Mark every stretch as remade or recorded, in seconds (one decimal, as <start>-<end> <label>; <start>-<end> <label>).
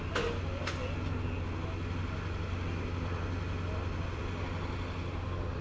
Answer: 0.0-5.6 recorded